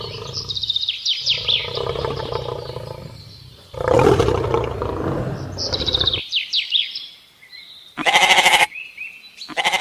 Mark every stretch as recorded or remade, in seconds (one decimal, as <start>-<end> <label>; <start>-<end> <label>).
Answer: 0.0-9.8 recorded